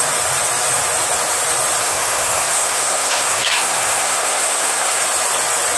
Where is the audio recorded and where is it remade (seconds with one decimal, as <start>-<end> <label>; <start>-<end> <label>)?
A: 0.0-1.8 recorded; 1.8-5.0 remade; 5.0-5.8 recorded